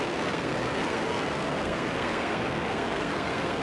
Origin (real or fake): fake